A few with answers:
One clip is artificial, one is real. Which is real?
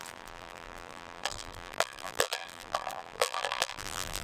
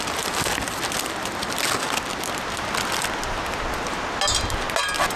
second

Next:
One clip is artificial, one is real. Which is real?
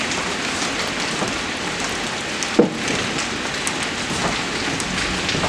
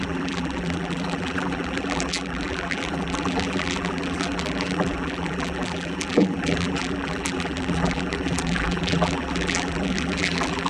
first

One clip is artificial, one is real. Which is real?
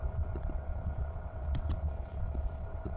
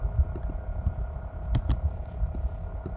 second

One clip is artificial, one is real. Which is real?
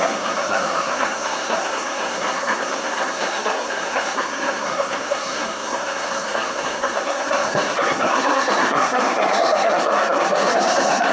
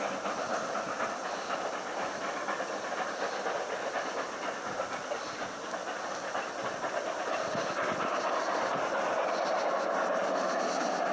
second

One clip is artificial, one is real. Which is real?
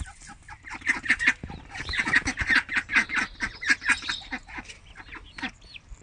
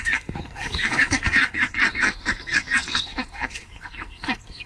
first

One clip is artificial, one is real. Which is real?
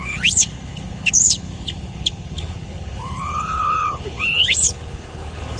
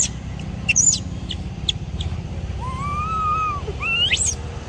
second